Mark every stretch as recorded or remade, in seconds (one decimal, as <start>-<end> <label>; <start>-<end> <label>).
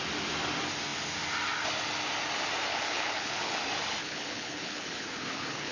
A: 0.0-2.7 recorded; 2.7-3.6 remade; 3.6-4.0 recorded; 4.0-5.7 remade